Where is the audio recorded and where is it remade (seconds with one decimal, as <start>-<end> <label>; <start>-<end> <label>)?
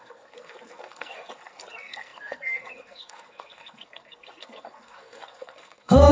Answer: 0.0-6.1 remade